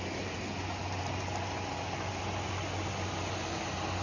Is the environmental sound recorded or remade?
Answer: recorded